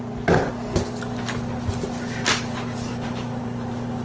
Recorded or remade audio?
recorded